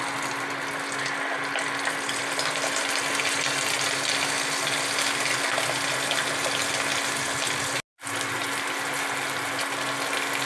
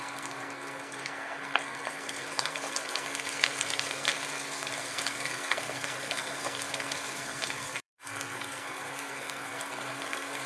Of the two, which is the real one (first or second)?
first